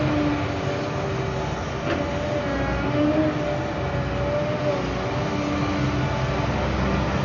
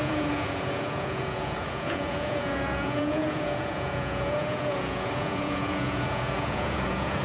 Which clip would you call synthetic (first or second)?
second